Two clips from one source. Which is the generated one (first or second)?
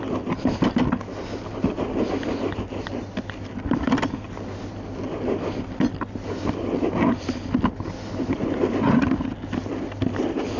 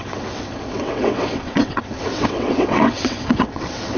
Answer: second